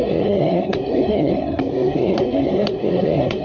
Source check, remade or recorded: remade